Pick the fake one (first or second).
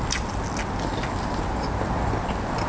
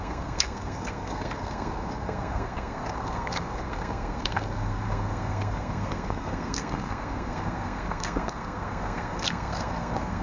second